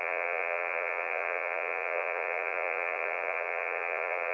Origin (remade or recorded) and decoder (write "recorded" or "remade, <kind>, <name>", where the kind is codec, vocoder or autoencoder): remade, vocoder, Vocos